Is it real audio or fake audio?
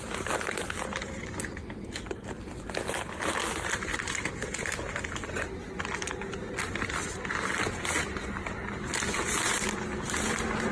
real